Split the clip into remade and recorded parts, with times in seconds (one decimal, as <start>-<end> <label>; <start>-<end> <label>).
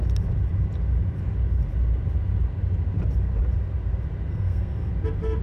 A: 0.0-4.3 recorded; 4.3-4.9 remade; 4.9-5.4 recorded